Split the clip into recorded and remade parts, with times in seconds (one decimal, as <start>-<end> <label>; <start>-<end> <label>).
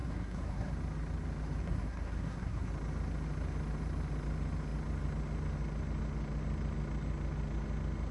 0.0-0.7 remade; 0.7-1.6 recorded; 1.6-2.7 remade; 2.7-8.1 recorded